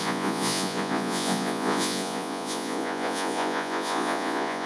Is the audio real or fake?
fake